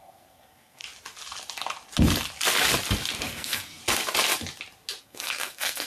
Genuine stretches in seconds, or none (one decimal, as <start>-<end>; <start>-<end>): 0.8-3.2; 3.8-5.0